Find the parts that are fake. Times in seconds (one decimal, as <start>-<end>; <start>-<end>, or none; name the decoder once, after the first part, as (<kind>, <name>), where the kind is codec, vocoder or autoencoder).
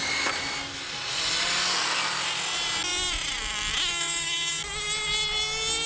none